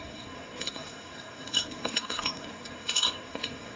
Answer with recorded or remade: remade